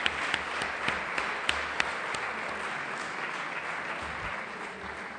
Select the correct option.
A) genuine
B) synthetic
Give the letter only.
A